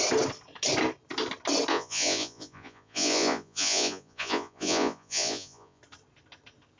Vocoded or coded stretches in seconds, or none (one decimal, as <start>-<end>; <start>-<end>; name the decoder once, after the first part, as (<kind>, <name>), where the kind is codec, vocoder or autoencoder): 1.7-5.8 (vocoder, Vocos)